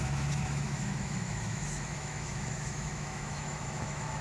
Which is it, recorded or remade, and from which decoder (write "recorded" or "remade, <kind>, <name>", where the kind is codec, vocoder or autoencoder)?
remade, autoencoder, DAC-VAE